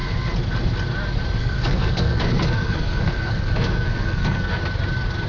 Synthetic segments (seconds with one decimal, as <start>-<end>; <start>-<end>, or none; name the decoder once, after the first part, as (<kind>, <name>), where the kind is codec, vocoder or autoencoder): 1.4-4.6 (codec, SNAC)